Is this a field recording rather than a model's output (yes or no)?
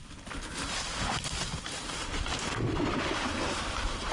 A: yes